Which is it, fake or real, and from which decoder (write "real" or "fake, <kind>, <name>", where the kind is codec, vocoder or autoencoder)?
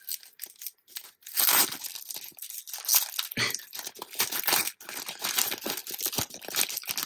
real